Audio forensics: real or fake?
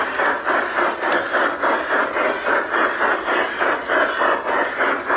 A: real